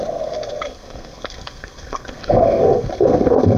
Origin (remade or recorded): remade